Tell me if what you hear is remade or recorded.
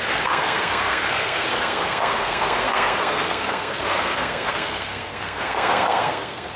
remade